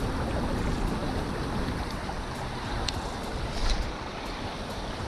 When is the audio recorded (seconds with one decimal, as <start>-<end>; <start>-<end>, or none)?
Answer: 0.0-5.1